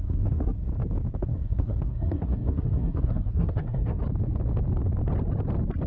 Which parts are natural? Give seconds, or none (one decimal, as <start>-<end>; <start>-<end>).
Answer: 0.7-1.2; 4.0-5.9